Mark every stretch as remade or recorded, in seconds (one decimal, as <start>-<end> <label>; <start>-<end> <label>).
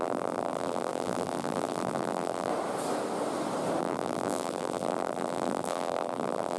0.0-2.5 remade; 2.5-3.8 recorded; 3.8-6.6 remade